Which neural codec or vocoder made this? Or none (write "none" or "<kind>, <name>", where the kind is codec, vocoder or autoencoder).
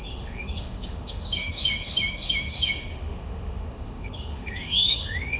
autoencoder, DAC-VAE